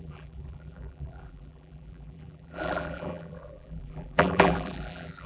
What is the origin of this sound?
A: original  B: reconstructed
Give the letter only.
B